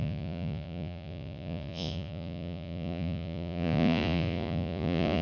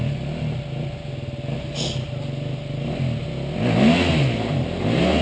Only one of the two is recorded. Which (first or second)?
second